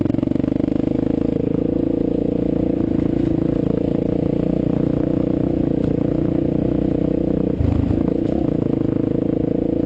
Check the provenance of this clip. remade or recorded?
recorded